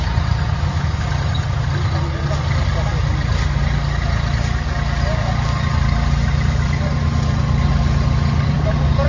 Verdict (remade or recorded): recorded